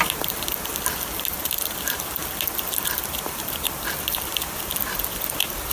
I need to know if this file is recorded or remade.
recorded